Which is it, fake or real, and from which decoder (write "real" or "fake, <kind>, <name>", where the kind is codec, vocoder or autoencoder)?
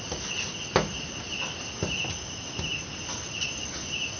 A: real